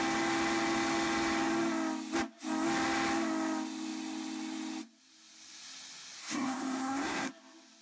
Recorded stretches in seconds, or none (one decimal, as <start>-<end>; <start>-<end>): 0.0-6.2; 7.3-7.8